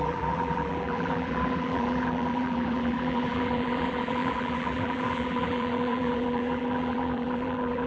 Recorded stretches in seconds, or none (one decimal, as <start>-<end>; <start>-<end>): none